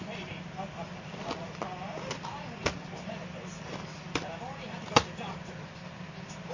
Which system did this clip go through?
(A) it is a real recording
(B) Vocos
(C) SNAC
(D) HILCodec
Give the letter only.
A